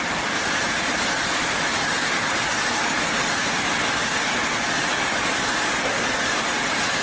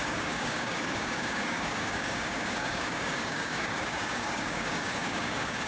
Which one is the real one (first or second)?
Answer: first